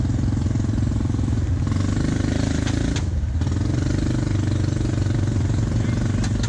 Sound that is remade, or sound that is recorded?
recorded